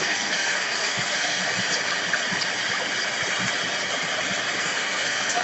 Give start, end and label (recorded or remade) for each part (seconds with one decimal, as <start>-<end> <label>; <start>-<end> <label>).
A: 0.0-1.4 remade; 1.4-4.6 recorded; 4.6-5.4 remade